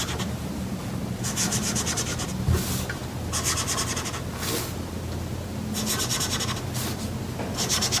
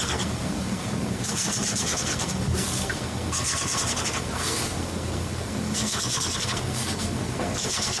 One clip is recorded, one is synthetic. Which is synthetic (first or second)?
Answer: second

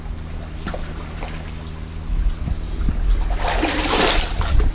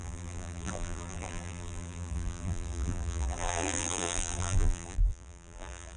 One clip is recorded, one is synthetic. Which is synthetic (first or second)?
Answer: second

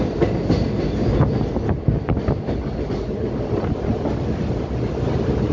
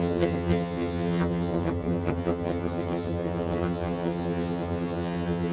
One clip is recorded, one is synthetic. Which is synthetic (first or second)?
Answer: second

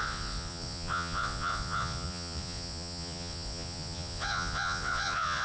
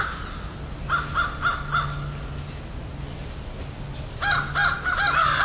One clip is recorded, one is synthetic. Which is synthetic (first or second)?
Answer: first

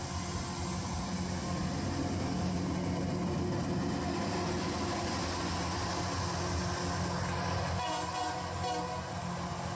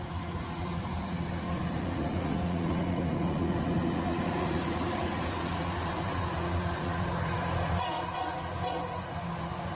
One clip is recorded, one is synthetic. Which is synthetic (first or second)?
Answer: second